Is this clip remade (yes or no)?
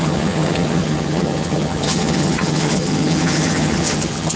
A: yes